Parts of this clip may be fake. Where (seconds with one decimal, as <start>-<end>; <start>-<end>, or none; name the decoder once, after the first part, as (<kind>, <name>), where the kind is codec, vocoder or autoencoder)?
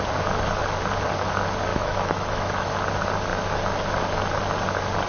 1.7-2.7 (autoencoder, DAC-VAE)